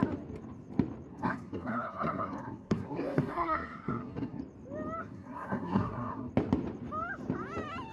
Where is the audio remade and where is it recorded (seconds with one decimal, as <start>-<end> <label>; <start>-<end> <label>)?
0.0-1.1 recorded; 1.1-4.4 remade; 4.4-5.0 recorded; 5.0-6.3 remade; 6.3-7.9 recorded